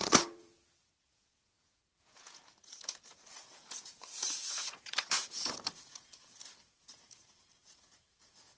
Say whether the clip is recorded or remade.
remade